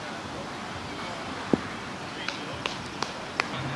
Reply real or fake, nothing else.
real